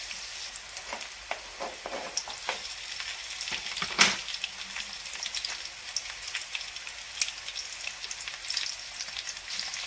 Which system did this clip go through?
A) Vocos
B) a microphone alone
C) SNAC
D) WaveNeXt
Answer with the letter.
B